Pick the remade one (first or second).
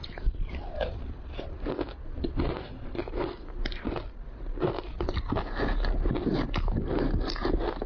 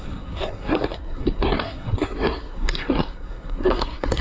second